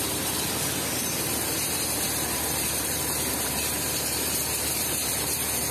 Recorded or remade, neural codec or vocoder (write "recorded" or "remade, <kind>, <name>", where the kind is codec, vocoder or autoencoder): remade, vocoder, BigVGAN v2